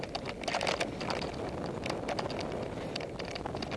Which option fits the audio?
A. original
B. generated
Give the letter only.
A